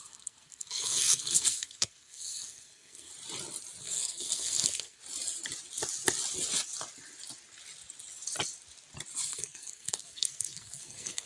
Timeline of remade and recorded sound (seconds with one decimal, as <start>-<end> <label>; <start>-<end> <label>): 0.0-3.1 remade; 3.1-3.8 recorded; 3.8-5.0 remade; 5.0-9.3 recorded; 9.3-11.3 remade